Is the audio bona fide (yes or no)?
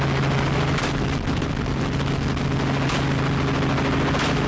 yes